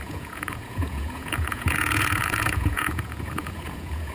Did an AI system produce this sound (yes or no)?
yes